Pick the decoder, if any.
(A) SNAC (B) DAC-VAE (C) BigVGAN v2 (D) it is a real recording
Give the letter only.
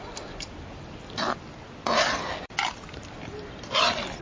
D